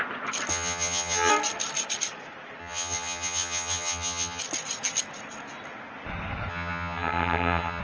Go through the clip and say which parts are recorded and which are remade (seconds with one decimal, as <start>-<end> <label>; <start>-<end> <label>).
0.0-0.5 recorded; 0.5-1.3 remade; 1.3-2.6 recorded; 2.6-4.4 remade; 4.4-6.5 recorded; 6.5-7.8 remade